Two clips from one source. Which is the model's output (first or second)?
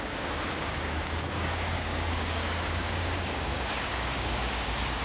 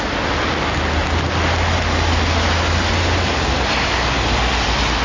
first